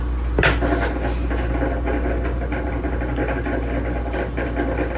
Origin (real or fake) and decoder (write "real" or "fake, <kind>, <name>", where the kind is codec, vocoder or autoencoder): real